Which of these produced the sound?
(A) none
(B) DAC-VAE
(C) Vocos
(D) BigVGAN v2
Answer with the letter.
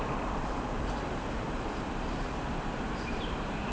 D